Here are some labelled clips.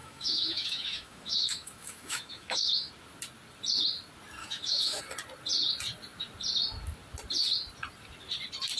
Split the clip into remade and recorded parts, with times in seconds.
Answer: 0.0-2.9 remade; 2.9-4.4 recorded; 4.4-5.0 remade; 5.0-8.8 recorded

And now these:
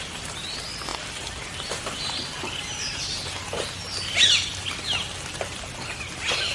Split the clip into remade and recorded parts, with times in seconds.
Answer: 0.0-6.5 recorded

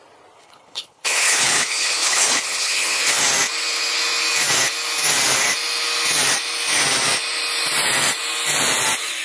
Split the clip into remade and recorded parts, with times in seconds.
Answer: 0.0-0.4 recorded; 0.4-3.2 remade; 3.2-9.2 recorded

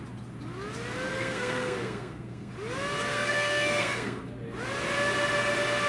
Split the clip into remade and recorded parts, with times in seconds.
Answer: 0.0-1.1 recorded; 1.1-2.5 remade; 2.5-3.1 recorded; 3.1-4.2 remade; 4.2-5.9 recorded

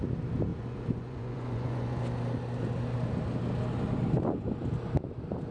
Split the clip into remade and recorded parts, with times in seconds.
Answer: 0.0-0.5 recorded; 0.5-2.0 remade; 2.0-5.5 recorded